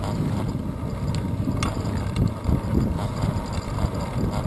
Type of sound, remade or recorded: recorded